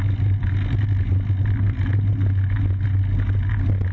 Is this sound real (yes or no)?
yes